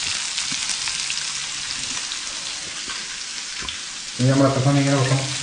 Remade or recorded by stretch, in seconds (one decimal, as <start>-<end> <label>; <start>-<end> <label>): 0.0-5.4 recorded